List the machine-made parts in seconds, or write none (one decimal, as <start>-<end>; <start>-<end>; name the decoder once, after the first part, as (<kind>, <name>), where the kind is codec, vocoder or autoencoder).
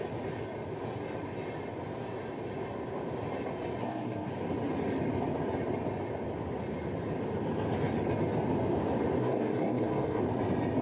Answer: 3.8-4.3 (codec, SNAC); 9.2-10.2